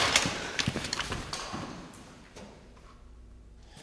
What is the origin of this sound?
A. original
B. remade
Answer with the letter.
B